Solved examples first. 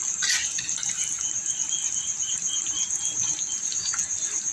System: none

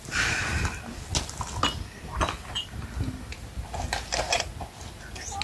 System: none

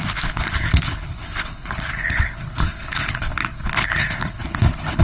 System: codec, HILCodec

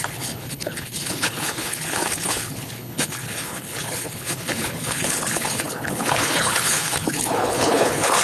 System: codec, HILCodec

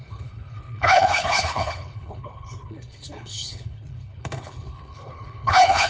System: codec, HILCodec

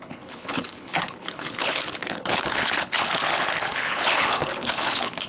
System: codec, HILCodec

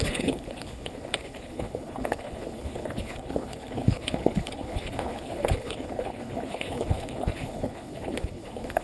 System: codec, HILCodec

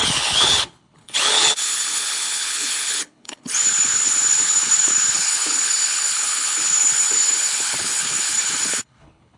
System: codec, HILCodec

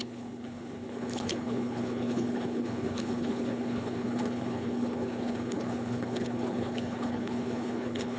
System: codec, HILCodec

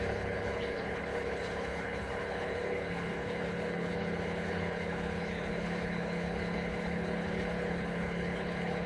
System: codec, HILCodec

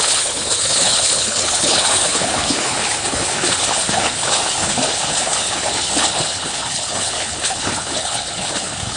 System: codec, HILCodec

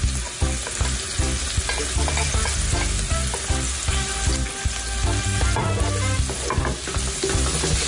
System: none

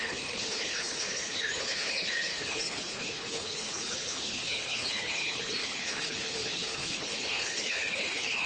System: codec, HILCodec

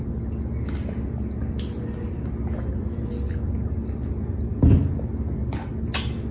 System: none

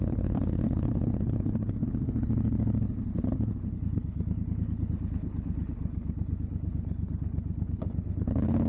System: codec, HILCodec